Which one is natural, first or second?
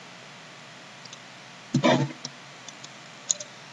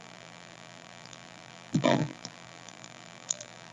first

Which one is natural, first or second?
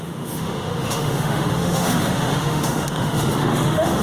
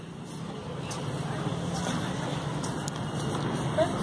second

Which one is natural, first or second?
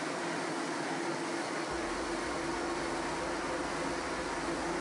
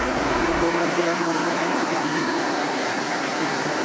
first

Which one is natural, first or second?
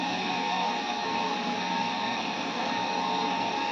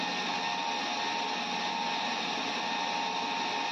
second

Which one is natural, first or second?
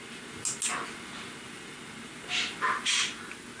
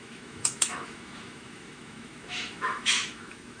first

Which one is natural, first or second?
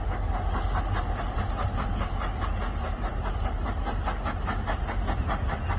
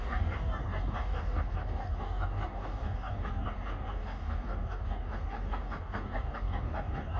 first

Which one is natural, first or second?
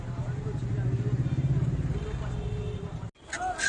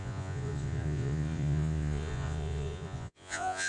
first